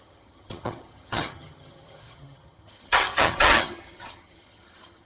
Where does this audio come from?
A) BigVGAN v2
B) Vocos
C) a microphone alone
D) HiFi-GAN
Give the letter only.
D